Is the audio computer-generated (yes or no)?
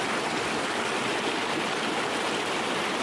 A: no